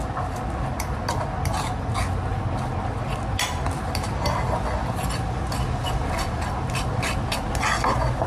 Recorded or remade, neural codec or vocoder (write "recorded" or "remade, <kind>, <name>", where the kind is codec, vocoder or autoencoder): recorded